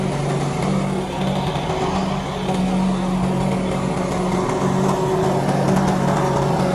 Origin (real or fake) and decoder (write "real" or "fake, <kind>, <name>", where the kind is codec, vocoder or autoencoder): real